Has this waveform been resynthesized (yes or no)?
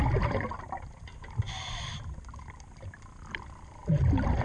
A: yes